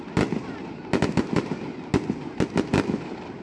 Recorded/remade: recorded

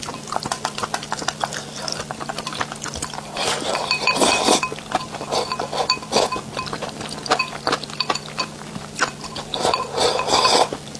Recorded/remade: recorded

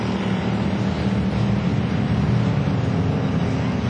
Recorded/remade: recorded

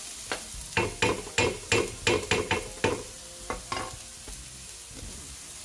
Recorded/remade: recorded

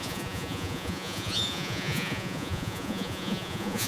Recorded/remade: remade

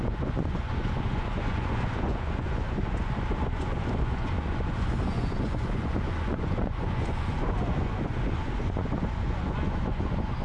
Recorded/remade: remade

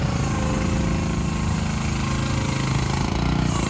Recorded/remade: recorded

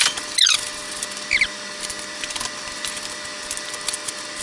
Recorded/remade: recorded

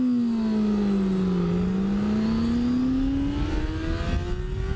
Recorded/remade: recorded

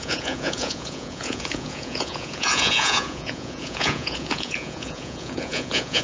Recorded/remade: remade